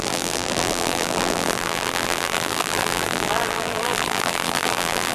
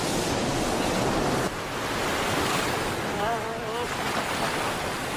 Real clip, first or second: second